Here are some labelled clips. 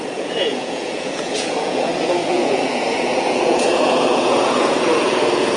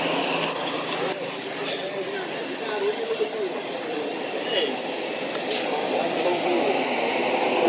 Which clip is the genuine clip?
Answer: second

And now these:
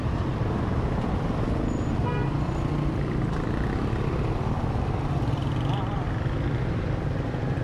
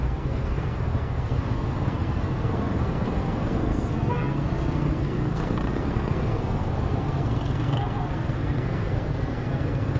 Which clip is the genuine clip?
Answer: first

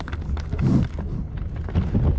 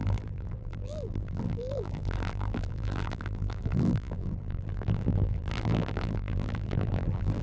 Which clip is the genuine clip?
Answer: first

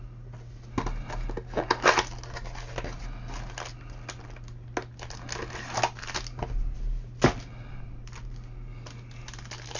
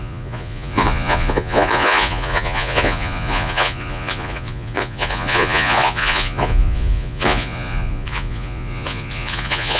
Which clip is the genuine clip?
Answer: first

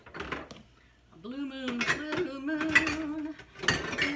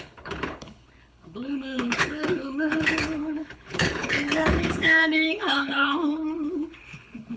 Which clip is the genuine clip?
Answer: first